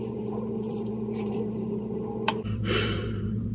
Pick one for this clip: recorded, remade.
remade